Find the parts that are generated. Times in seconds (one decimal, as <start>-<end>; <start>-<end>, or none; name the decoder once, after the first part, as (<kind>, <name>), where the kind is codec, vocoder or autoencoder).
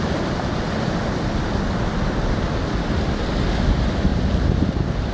none